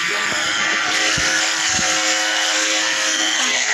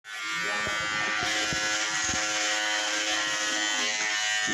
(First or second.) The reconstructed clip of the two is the first